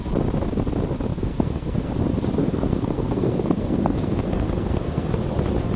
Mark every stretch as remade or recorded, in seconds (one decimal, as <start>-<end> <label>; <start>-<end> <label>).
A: 0.0-1.1 recorded; 1.1-1.9 remade; 1.9-2.4 recorded; 2.4-5.2 remade; 5.2-5.8 recorded